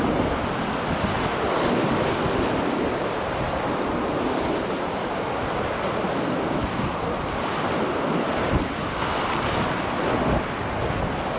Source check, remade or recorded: recorded